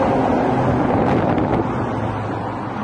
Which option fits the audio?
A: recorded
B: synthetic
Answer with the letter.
A